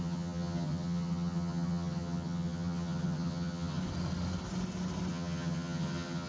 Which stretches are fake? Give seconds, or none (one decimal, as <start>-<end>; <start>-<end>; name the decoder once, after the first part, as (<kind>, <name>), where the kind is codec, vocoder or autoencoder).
0.0-3.8 (vocoder, HiFi-GAN); 5.1-6.3